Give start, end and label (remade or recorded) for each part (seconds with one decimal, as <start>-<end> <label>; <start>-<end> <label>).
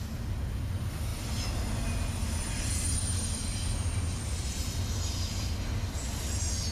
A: 0.0-6.7 recorded